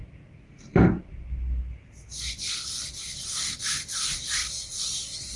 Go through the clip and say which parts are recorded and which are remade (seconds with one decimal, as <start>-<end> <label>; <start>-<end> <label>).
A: 0.0-3.2 recorded; 3.2-4.4 remade; 4.4-5.4 recorded